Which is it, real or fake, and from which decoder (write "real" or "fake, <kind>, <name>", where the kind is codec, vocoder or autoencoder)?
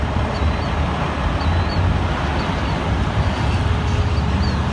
real